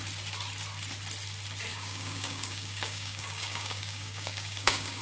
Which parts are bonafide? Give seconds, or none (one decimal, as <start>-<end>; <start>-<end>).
0.0-1.7